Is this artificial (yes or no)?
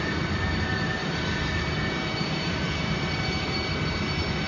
yes